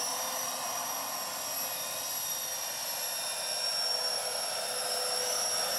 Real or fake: real